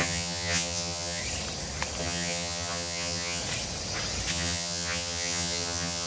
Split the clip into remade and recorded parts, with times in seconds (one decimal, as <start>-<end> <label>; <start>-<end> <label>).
0.0-1.2 remade; 1.2-2.0 recorded; 2.0-3.4 remade; 3.4-4.3 recorded; 4.3-6.1 remade